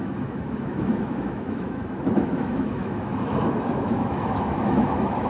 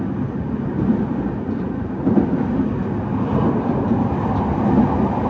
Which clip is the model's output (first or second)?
first